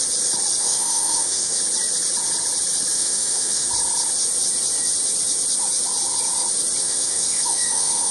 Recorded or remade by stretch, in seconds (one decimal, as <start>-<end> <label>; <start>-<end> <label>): 0.0-0.6 recorded; 0.6-1.6 remade; 1.6-2.9 recorded; 2.9-3.7 remade; 3.7-6.8 recorded; 6.8-8.1 remade